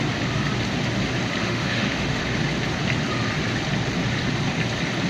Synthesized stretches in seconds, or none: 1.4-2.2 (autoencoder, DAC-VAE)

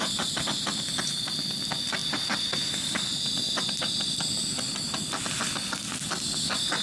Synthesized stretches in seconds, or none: none